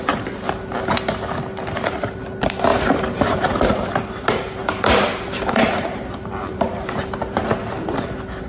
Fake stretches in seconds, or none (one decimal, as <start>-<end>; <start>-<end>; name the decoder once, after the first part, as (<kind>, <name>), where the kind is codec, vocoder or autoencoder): 2.7-3.6 (vocoder, BigVGAN v2); 4.6-7.4